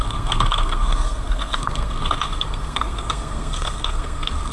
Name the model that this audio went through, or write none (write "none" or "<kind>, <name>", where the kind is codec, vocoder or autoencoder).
codec, SNAC